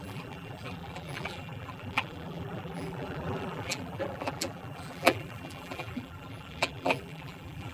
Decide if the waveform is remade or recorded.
remade